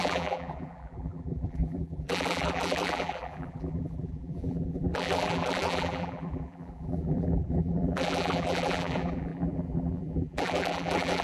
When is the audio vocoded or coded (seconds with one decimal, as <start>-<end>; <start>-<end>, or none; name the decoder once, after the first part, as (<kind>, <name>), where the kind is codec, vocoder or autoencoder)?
0.0-11.2 (vocoder, BigVGAN v2)